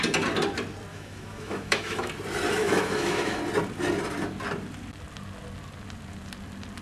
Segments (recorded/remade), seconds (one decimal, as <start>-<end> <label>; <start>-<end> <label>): 0.0-0.9 recorded; 0.9-2.1 remade; 2.1-2.6 recorded; 2.6-3.4 remade; 3.4-6.8 recorded